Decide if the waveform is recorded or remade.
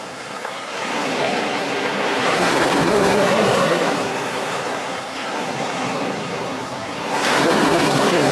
remade